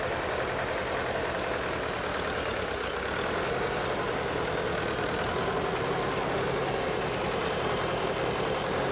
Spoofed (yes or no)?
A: no